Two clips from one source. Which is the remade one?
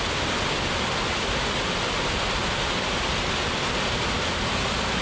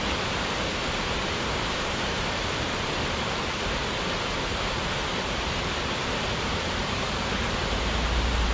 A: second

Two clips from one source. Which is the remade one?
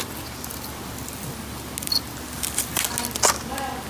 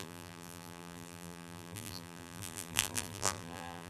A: second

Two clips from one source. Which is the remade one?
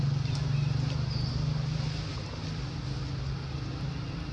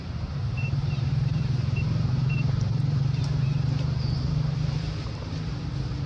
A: second